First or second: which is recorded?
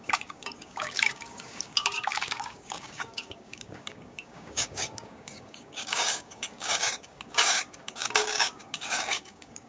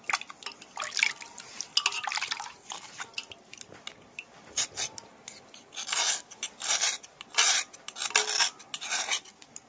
second